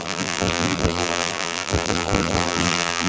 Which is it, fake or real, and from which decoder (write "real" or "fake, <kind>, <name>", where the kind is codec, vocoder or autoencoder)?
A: fake, vocoder, BigVGAN v2